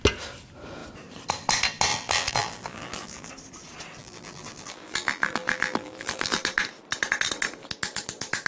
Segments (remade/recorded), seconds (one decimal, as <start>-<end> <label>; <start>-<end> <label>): 0.0-1.9 recorded; 1.9-3.3 remade; 3.3-4.0 recorded; 4.0-6.4 remade; 6.4-8.5 recorded